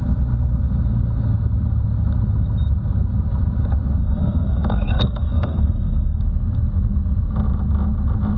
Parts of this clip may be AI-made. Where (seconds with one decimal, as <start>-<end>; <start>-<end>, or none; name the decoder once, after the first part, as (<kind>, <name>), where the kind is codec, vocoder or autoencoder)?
4.0-6.2 (codec, SNAC)